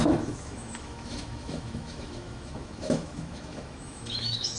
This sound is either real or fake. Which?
fake